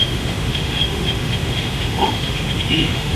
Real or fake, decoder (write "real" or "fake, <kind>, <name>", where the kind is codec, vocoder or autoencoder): fake, autoencoder, DAC-VAE